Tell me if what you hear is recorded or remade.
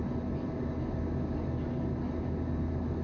recorded